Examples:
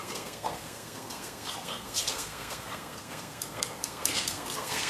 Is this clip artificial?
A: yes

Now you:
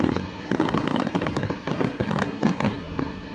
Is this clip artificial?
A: yes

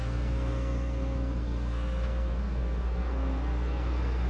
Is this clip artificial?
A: yes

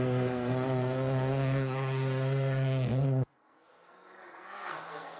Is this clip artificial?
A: yes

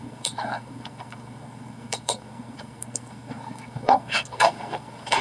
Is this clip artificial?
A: yes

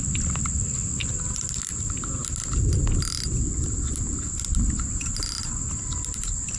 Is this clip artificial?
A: no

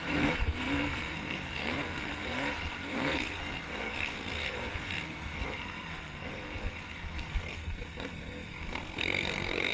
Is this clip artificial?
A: yes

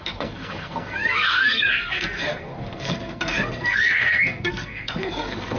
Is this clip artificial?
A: yes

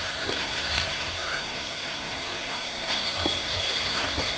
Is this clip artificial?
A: yes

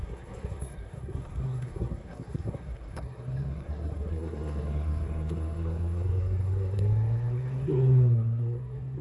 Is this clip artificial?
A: yes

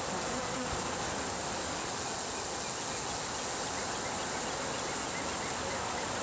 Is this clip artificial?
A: no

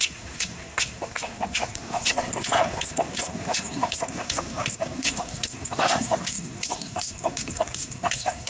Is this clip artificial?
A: yes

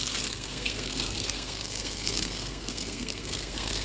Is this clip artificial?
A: yes